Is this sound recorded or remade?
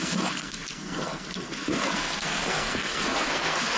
remade